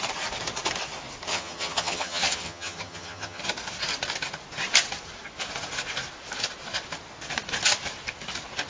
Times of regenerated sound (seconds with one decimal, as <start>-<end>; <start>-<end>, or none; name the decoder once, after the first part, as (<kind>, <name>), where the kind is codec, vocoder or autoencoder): 1.3-3.4 (vocoder, HiFi-GAN)